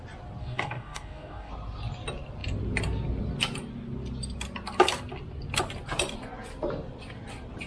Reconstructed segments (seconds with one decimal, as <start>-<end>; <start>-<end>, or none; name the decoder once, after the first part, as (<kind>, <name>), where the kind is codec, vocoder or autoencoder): 0.4-1.5 (codec, DAC)

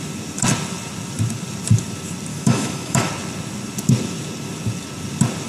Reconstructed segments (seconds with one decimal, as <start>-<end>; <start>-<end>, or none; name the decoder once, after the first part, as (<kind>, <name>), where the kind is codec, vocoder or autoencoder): 2.3-3.1 (autoencoder, DAC-VAE)